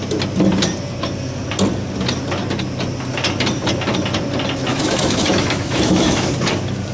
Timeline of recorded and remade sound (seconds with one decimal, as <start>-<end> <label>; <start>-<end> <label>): 0.0-4.7 recorded; 4.7-6.3 remade; 6.3-6.9 recorded